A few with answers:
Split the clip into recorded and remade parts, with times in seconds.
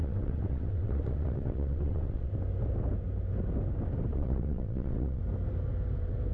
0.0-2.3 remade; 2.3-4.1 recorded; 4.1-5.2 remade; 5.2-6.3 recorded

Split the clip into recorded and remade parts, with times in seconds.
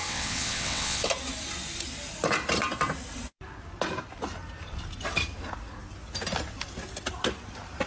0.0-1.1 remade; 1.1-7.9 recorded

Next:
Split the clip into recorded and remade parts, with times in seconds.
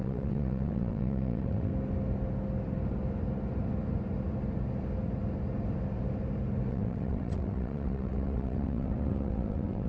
0.0-1.7 remade; 1.7-6.7 recorded; 6.7-9.9 remade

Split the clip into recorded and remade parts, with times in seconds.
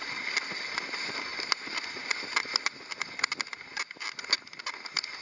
0.0-5.2 recorded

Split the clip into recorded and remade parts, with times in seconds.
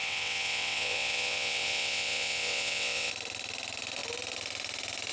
0.0-3.1 remade; 3.1-5.1 recorded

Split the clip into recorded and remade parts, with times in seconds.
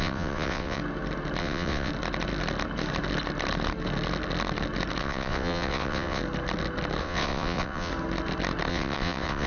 0.0-0.8 remade; 0.8-1.4 recorded; 1.4-1.9 remade; 1.9-5.0 recorded; 5.0-6.2 remade; 6.2-7.0 recorded; 7.0-7.9 remade; 7.9-8.7 recorded; 8.7-9.5 remade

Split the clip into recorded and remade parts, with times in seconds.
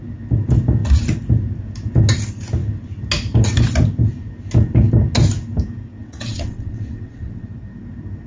0.0-6.0 recorded; 6.0-7.5 remade; 7.5-8.3 recorded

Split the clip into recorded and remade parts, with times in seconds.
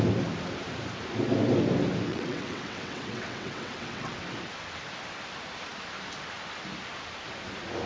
0.0-2.1 recorded; 2.1-4.2 remade; 4.2-7.9 recorded